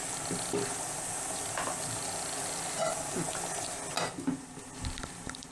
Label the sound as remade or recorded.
recorded